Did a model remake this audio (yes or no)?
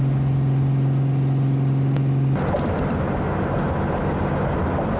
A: no